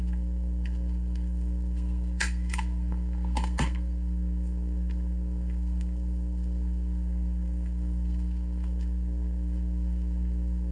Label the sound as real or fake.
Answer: fake